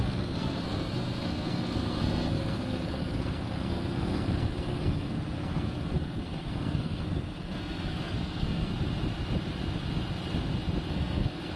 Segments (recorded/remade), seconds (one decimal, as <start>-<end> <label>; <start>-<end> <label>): 0.0-8.7 remade; 8.7-10.9 recorded; 10.9-11.6 remade

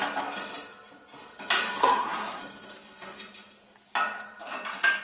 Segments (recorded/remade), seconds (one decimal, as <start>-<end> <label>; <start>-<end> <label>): 0.0-1.8 recorded; 1.8-2.4 remade; 2.4-5.0 recorded

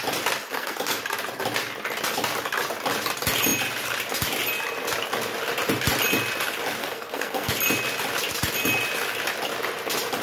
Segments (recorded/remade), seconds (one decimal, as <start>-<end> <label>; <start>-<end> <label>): 0.0-0.4 recorded; 0.4-1.0 remade; 1.0-6.8 recorded; 6.8-7.5 remade; 7.5-10.2 recorded

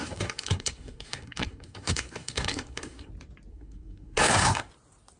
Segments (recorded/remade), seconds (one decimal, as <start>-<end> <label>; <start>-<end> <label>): 0.0-3.1 remade; 3.1-3.5 recorded; 3.5-4.7 remade; 4.7-5.2 recorded

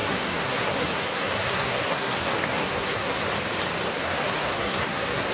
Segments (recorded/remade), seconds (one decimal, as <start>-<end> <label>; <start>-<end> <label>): 0.0-3.2 remade; 3.2-3.9 recorded; 3.9-5.3 remade

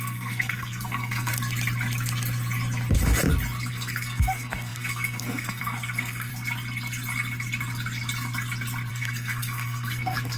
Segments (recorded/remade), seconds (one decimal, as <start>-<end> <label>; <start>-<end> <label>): 0.0-1.3 remade; 1.3-3.7 recorded; 3.7-6.3 remade; 6.3-8.9 recorded; 8.9-10.4 remade

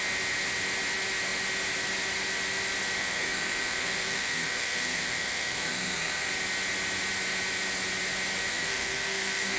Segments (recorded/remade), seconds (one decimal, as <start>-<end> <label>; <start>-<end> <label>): 0.0-3.0 recorded; 3.0-6.3 remade; 6.3-8.5 recorded; 8.5-9.6 remade